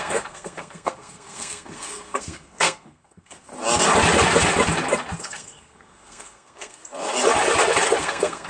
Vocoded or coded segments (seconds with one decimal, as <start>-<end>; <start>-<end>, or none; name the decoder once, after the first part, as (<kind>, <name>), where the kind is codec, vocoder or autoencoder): 0.0-3.5 (codec, SNAC); 5.2-6.8; 8.0-8.5